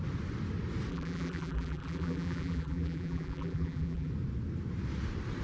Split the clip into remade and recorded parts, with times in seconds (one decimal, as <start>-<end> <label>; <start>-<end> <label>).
0.0-0.9 recorded; 0.9-4.1 remade; 4.1-5.4 recorded